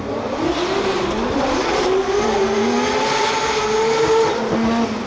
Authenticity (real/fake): real